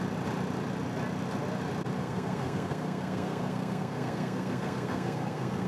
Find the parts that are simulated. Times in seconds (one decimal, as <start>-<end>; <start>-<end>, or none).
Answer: 2.0-5.7